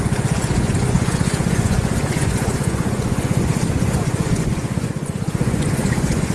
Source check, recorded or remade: remade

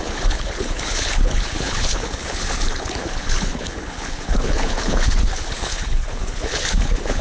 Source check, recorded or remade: remade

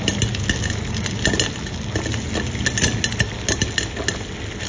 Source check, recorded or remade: recorded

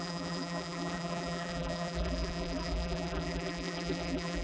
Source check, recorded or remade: remade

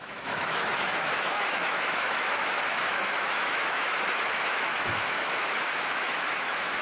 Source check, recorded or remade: remade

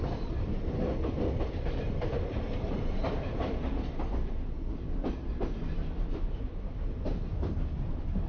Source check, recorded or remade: remade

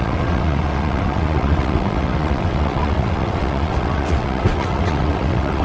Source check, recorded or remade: remade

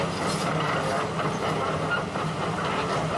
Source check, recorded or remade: recorded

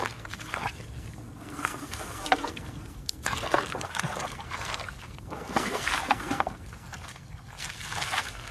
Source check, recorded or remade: remade